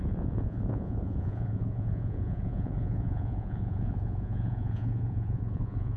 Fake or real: fake